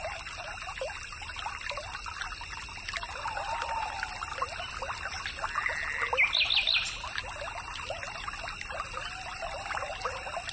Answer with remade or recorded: recorded